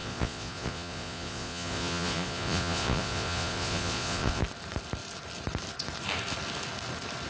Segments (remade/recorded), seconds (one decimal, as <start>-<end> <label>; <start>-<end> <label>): 0.0-4.4 remade; 4.4-7.3 recorded